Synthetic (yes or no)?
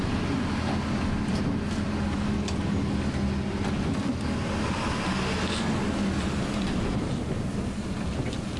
no